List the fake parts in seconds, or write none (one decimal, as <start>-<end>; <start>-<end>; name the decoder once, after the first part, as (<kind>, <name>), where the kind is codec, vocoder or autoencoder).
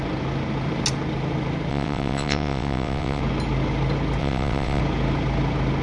1.7-3.2 (vocoder, WaveNeXt); 4.2-4.8